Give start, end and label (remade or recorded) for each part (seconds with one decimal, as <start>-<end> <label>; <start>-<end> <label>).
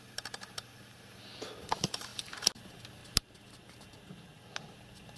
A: 0.0-3.0 remade; 3.0-5.2 recorded